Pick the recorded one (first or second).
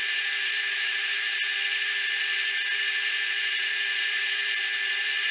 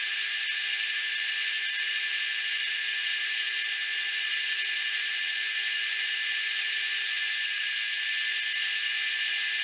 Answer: second